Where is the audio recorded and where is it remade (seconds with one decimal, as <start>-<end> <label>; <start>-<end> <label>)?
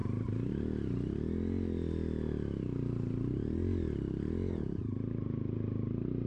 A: 0.0-6.3 recorded